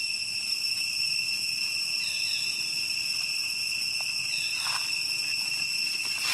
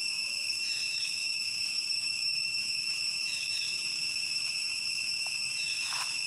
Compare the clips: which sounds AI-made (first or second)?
second